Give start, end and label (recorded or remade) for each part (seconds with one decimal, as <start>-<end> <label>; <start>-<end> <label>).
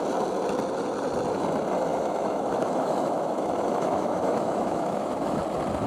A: 0.0-1.9 recorded; 1.9-5.4 remade; 5.4-5.9 recorded